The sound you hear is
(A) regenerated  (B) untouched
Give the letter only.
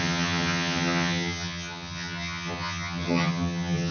A